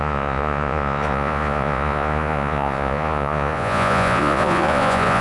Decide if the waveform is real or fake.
fake